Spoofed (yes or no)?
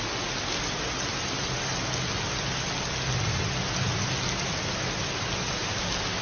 no